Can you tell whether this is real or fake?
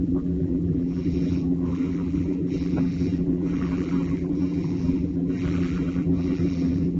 fake